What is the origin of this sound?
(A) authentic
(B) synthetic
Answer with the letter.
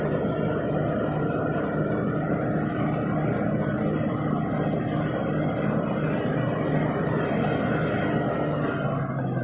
A